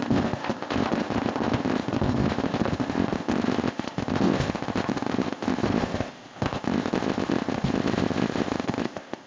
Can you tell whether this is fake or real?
fake